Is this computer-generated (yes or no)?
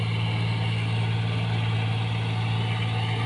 no